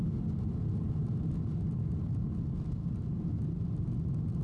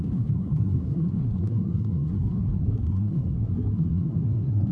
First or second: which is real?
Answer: first